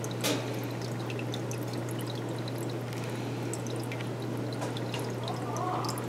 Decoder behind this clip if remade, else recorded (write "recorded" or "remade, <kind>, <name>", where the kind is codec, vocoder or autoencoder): recorded